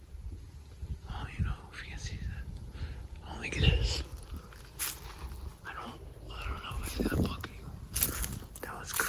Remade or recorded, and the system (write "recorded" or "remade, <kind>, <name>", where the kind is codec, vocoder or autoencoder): recorded